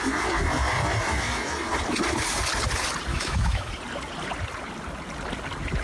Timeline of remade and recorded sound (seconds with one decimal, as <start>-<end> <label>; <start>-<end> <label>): 0.0-3.1 recorded; 3.1-3.7 remade; 3.7-5.8 recorded